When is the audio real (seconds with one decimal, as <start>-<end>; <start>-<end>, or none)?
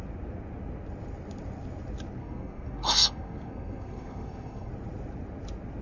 0.0-2.2; 4.7-5.8